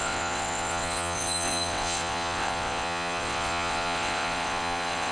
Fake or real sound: fake